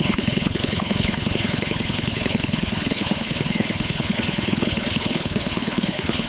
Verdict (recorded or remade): remade